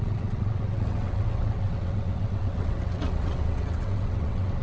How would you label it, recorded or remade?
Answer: remade